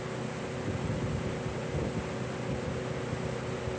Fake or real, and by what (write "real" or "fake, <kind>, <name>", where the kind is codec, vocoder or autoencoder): real